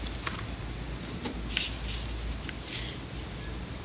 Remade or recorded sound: recorded